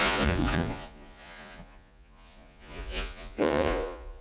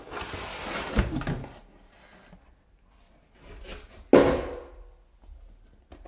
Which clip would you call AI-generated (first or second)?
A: first